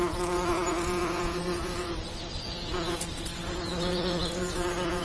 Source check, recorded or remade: remade